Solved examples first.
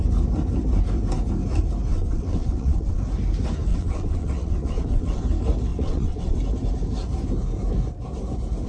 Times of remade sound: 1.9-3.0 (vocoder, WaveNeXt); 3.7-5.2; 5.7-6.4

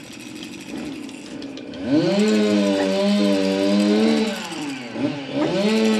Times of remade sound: none